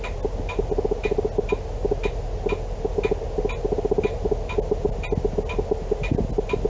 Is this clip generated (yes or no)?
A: no